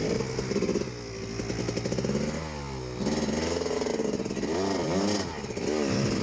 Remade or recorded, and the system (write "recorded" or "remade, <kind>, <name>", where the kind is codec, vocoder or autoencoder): recorded